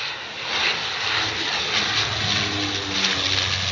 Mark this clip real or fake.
real